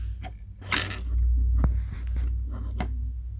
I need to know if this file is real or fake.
real